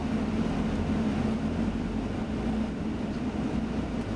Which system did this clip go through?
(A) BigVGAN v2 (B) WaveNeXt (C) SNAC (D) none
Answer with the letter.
D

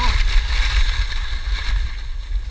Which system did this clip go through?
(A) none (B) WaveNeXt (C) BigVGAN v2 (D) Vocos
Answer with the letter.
A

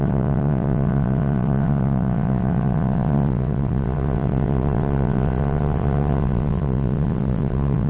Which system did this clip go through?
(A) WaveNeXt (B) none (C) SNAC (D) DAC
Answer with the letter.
A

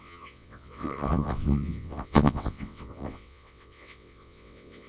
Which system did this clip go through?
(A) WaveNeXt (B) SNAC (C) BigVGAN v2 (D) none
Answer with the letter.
A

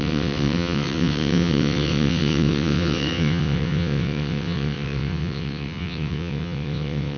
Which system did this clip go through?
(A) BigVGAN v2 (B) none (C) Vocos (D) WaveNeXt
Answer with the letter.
D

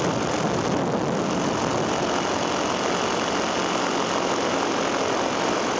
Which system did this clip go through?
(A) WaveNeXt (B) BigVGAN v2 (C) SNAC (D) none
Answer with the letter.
D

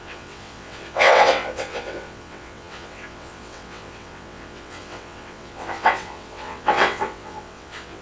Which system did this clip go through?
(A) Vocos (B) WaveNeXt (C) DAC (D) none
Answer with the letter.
B